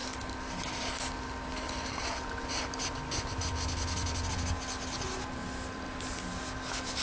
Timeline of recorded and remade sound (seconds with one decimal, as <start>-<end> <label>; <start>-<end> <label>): 0.0-7.0 recorded